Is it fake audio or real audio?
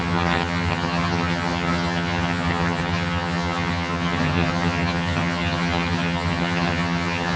fake